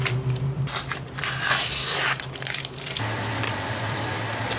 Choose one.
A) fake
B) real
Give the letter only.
A